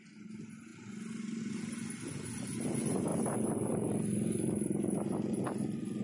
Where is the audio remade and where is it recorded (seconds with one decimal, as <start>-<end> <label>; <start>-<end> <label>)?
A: 0.0-6.0 recorded